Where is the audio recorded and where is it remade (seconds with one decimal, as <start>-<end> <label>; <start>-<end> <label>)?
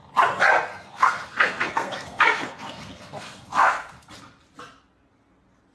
0.0-0.7 recorded; 0.7-4.1 remade; 4.1-5.7 recorded